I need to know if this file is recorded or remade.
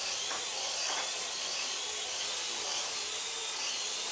recorded